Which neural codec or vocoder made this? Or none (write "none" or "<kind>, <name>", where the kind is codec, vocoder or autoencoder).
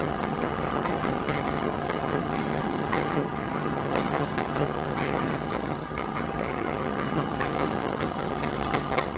vocoder, HiFi-GAN